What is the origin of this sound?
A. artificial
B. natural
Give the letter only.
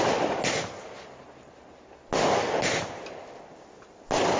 B